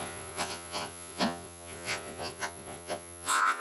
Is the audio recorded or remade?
remade